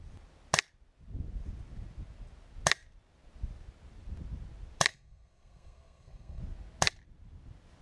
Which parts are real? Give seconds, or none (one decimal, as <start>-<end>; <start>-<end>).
0.0-4.9; 6.4-7.8